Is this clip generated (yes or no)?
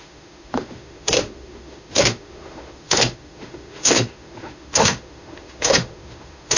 yes